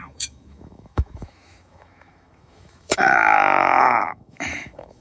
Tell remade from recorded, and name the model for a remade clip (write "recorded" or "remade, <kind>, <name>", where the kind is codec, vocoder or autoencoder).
remade, autoencoder, DAC-VAE